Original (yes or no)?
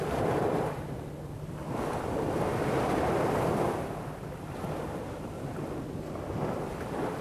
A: yes